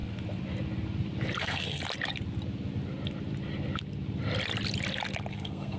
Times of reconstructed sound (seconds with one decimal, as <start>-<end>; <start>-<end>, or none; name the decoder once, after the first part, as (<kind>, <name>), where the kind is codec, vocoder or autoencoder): 1.4-1.8 (codec, SNAC); 5.3-5.8